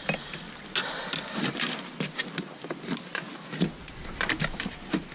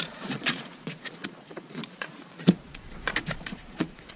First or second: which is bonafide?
first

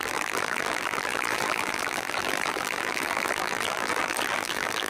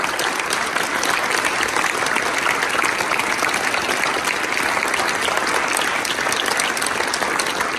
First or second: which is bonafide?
second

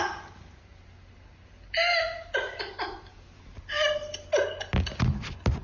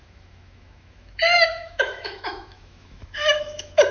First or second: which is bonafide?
first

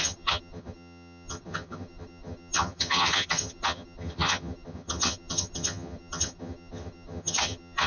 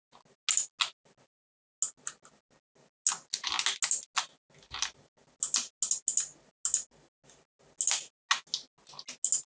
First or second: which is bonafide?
second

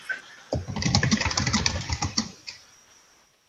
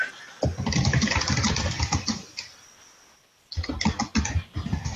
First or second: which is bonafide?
second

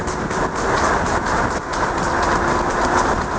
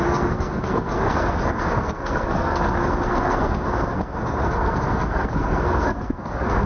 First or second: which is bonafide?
first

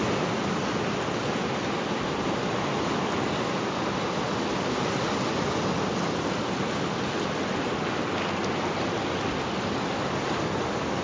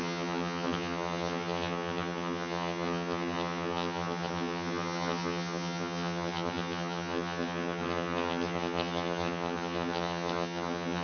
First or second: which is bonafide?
first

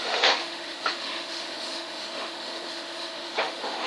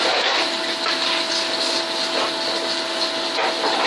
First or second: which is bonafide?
second